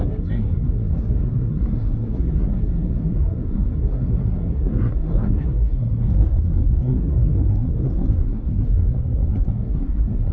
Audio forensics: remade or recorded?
remade